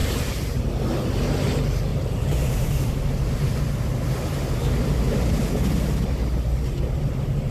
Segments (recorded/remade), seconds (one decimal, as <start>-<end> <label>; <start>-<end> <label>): 0.0-0.5 remade; 0.5-1.9 recorded; 1.9-4.1 remade; 4.1-7.5 recorded